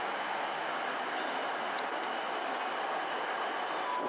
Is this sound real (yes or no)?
yes